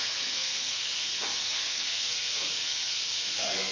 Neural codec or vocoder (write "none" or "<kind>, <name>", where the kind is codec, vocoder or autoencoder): codec, SNAC